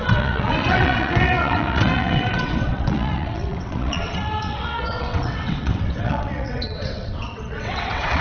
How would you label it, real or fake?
fake